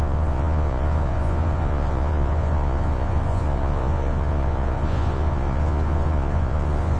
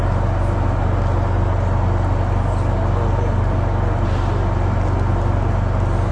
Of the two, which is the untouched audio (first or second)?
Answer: second